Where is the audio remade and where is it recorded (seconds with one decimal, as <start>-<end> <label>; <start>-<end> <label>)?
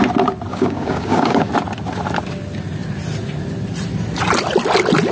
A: 0.0-0.5 recorded; 0.5-1.5 remade; 1.5-5.1 recorded